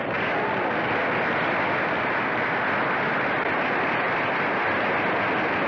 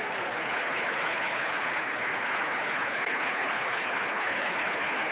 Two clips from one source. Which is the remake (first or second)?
second